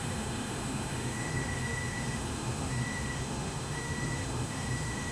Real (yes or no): no